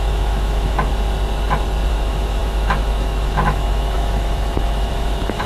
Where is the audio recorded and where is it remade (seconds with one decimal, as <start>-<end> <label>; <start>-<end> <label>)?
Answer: 0.0-0.9 remade; 0.9-1.9 recorded; 1.9-5.5 remade